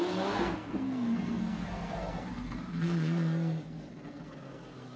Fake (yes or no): yes